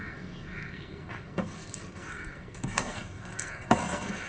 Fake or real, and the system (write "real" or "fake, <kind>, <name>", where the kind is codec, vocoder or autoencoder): fake, codec, SNAC